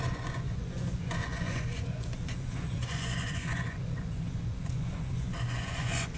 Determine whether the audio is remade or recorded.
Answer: remade